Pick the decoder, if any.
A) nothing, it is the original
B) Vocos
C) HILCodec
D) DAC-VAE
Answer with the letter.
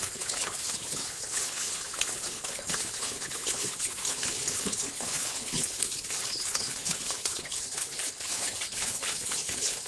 C